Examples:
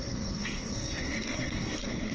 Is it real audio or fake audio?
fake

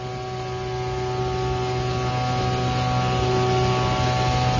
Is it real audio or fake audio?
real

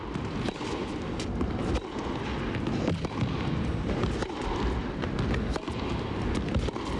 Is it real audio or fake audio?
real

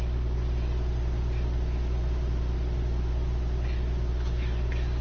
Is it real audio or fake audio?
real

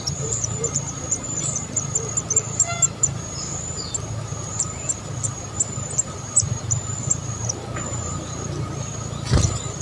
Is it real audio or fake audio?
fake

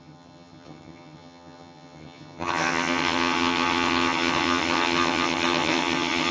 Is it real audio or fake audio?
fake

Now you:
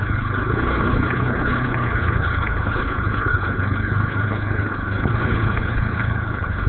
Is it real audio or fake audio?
fake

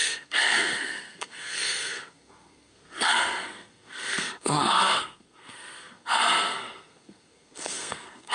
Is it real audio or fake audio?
fake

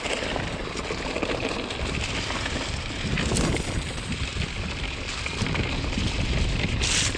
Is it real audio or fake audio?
real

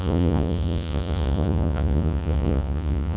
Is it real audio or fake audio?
fake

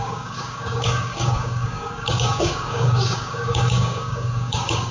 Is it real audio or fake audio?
fake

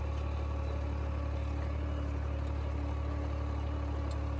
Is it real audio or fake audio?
real